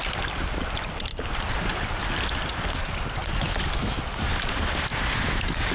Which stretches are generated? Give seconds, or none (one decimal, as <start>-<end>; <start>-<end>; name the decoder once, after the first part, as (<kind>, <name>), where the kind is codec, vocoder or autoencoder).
none